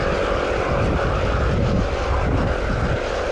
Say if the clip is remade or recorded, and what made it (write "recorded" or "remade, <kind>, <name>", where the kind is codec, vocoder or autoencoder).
recorded